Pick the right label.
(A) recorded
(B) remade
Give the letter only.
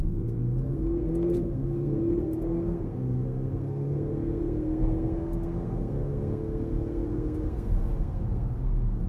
B